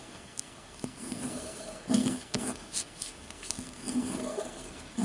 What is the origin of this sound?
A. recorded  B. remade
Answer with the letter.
B